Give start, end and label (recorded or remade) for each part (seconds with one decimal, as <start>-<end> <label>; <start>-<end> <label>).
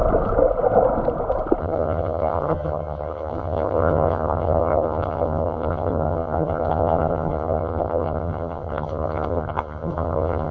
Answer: 0.0-1.6 recorded; 1.6-10.5 remade